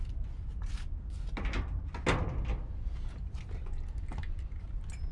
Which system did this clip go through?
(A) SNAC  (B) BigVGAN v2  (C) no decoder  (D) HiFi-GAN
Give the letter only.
C